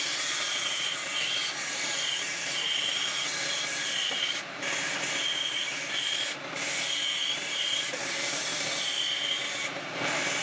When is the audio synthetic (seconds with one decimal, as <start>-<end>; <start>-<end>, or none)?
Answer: 0.0-1.1; 2.1-3.0; 7.4-10.4